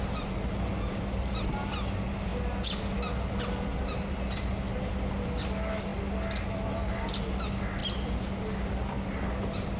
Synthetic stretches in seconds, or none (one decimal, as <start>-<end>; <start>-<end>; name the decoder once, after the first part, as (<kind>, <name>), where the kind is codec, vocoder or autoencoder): none

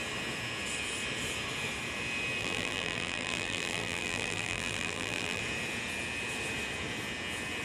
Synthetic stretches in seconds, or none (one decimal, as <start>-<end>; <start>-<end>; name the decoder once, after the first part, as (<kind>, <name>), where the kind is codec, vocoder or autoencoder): 2.4-5.4 (vocoder, BigVGAN v2)

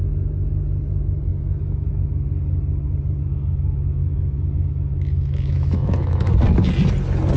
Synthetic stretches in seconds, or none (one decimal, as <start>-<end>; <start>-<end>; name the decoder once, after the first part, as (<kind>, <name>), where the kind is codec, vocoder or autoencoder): 1.3-1.9 (autoencoder, DAC-VAE); 3.3-6.4

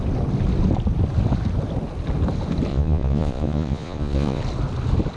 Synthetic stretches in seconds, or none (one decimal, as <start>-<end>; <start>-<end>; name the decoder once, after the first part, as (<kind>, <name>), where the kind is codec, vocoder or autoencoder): 2.7-4.4 (vocoder, Vocos)

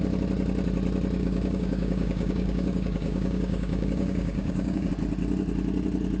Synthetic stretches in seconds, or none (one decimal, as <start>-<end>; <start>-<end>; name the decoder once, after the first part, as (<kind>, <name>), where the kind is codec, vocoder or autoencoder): 1.2-4.9 (codec, DAC)

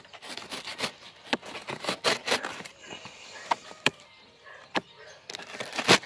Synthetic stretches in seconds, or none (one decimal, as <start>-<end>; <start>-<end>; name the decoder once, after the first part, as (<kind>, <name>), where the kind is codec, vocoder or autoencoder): 0.7-4.4 (vocoder, BigVGAN v2)

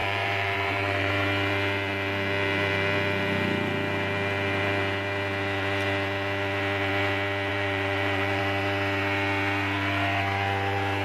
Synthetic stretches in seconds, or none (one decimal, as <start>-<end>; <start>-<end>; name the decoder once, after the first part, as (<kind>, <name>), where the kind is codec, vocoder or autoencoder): 0.0-1.1 (vocoder, BigVGAN v2); 7.5-8.4

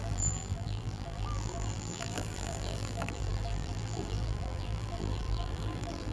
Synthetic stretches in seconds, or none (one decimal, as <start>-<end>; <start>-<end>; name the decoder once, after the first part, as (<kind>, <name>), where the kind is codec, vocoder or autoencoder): 0.0-6.1 (vocoder, BigVGAN v2)